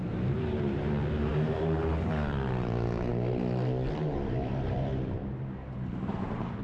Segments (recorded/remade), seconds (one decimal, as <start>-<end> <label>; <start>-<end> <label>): 0.0-3.1 remade; 3.1-3.9 recorded; 3.9-4.9 remade; 4.9-6.6 recorded